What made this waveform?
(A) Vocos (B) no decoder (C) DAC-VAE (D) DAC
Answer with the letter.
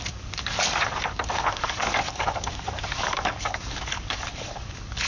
D